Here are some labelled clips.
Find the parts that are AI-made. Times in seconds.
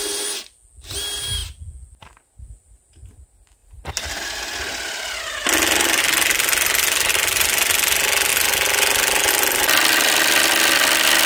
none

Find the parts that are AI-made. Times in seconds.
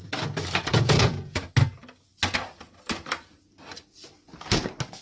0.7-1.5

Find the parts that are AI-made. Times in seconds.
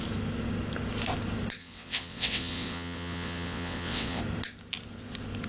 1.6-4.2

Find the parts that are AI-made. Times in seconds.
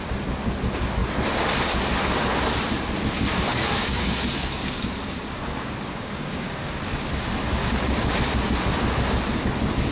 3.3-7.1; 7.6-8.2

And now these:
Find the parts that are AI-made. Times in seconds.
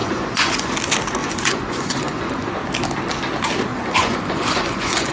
0.0-0.7; 1.2-2.5; 3.7-5.1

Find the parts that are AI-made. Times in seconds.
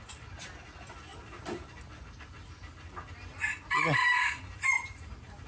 none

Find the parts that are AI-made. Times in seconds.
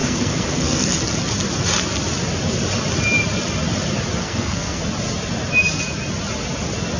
0.0-1.0; 4.2-4.8